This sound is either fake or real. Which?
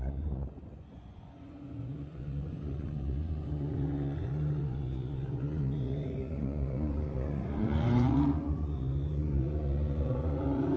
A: fake